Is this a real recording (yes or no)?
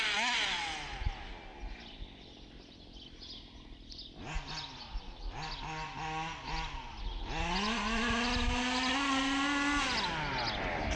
yes